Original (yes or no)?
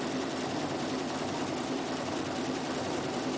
yes